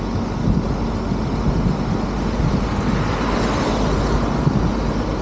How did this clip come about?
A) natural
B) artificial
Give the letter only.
A